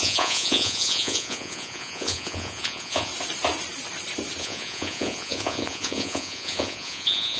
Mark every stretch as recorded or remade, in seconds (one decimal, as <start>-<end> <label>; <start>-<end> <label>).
0.0-3.1 remade; 3.1-4.4 recorded; 4.4-7.4 remade

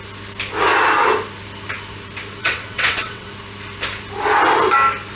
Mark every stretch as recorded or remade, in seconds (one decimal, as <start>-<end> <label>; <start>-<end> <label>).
0.0-2.4 recorded; 2.4-3.3 remade; 3.3-5.2 recorded

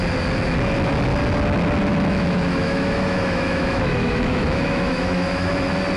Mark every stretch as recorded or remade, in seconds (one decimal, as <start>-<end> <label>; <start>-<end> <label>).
0.0-1.9 recorded; 1.9-5.5 remade; 5.5-6.0 recorded

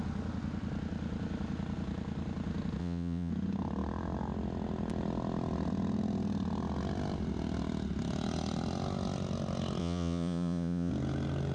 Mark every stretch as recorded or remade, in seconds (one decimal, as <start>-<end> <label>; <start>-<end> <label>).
0.0-2.8 recorded; 2.8-3.3 remade; 3.3-9.8 recorded; 9.8-10.9 remade; 10.9-11.5 recorded

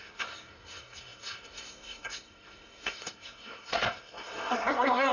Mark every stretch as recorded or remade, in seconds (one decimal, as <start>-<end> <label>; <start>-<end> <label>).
0.0-5.1 remade

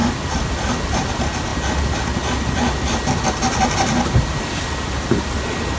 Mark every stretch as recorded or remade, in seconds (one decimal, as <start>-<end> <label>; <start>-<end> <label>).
0.0-5.8 recorded